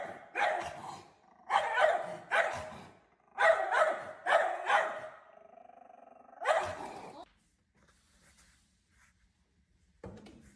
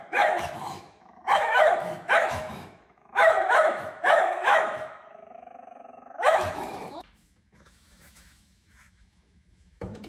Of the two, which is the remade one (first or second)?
second